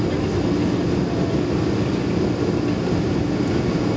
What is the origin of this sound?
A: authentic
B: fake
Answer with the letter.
A